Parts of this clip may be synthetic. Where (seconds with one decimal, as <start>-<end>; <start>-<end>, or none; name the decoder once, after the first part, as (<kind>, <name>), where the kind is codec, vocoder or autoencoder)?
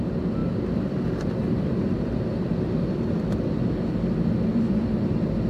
0.4-3.7 (vocoder, BigVGAN v2); 4.5-5.1